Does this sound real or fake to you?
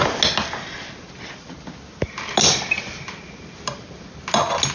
real